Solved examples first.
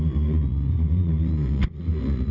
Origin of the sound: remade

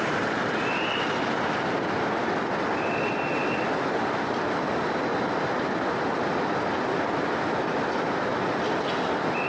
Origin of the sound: recorded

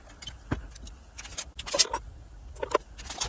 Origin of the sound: recorded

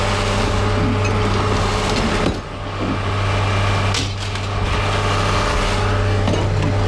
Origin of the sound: recorded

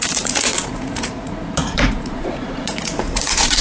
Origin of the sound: remade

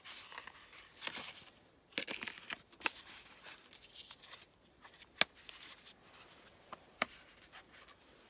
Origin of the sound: recorded